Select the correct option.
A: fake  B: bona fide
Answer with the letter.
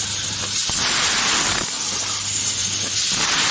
B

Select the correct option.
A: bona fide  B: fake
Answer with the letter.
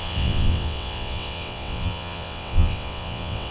B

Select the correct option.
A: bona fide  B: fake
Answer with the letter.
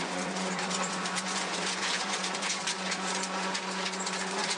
B